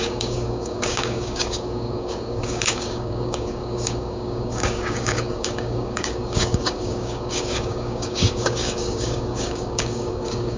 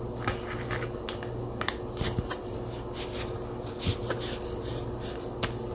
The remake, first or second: first